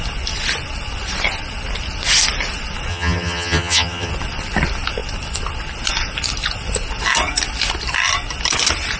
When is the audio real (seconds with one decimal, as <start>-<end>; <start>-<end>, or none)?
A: 0.0-2.9; 4.1-9.0